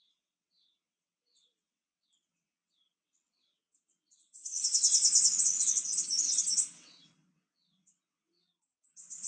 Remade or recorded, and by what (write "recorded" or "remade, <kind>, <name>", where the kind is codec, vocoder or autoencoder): remade, vocoder, WaveNeXt